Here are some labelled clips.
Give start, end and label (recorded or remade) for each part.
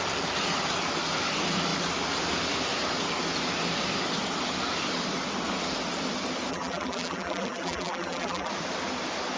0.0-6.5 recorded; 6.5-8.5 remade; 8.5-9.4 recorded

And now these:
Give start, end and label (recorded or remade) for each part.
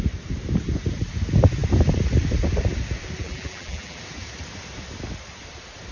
0.0-3.2 recorded; 3.2-4.0 remade; 4.0-5.9 recorded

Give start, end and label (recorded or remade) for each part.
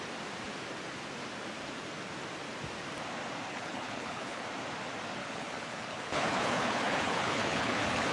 0.0-3.5 recorded; 3.5-4.4 remade; 4.4-5.2 recorded; 5.2-8.1 remade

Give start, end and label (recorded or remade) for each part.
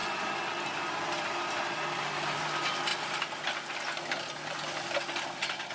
0.0-5.7 recorded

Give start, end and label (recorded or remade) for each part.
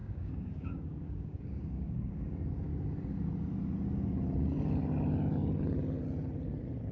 0.0-2.7 remade; 2.7-6.9 recorded